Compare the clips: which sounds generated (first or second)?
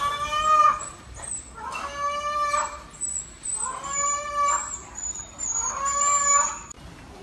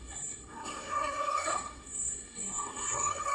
second